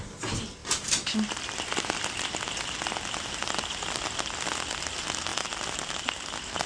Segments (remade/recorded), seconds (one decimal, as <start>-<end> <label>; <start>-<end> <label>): 0.0-6.7 recorded